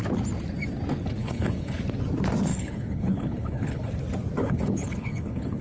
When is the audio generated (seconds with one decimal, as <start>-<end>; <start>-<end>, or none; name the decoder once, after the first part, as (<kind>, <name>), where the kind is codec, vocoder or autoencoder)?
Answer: 1.2-1.8 (codec, HILCodec); 2.5-3.9; 4.4-5.6